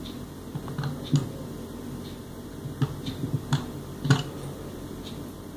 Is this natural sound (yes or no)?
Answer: yes